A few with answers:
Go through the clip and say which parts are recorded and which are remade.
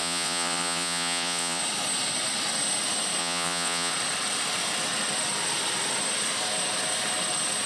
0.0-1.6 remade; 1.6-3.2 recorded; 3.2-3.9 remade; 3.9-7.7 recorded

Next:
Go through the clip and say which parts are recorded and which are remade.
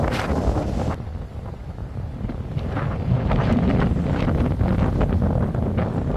0.0-1.8 recorded; 1.8-4.2 remade; 4.2-6.2 recorded